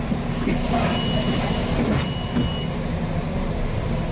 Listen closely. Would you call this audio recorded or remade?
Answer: recorded